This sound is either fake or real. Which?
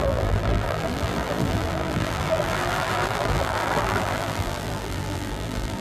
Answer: fake